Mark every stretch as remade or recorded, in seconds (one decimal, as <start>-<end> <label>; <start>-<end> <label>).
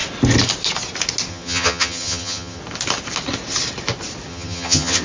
0.0-1.3 recorded; 1.3-2.6 remade; 2.6-4.3 recorded; 4.3-5.0 remade